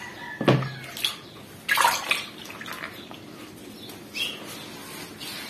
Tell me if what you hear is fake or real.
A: real